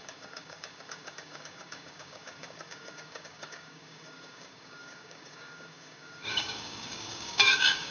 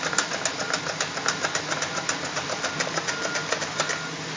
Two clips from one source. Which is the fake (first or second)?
first